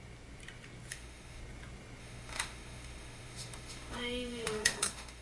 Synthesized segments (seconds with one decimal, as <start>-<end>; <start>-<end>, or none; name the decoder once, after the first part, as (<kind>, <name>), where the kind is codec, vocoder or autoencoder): 0.9-1.4 (autoencoder, DAC-VAE); 2.0-5.2